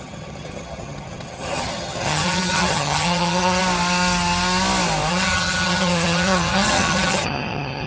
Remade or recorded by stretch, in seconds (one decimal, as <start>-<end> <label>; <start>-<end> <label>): 0.0-3.6 remade; 3.6-5.1 recorded; 5.1-7.9 remade